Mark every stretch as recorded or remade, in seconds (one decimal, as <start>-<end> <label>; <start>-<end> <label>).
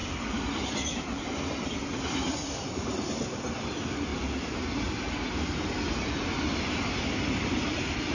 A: 0.0-4.1 remade; 4.1-6.9 recorded; 6.9-8.1 remade